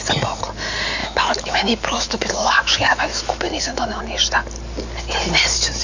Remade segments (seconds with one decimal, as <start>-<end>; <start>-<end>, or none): 1.0-4.0